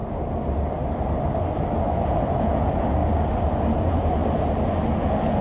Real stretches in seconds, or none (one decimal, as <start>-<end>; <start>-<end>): 0.0-2.4; 3.0-3.8; 4.2-5.0